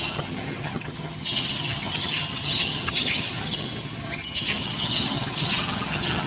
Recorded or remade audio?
remade